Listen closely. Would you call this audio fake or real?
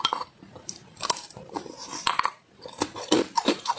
fake